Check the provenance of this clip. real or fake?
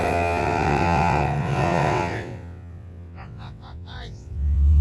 fake